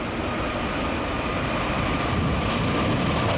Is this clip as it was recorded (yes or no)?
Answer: no